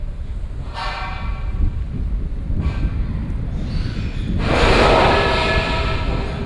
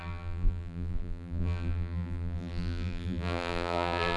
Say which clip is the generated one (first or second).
second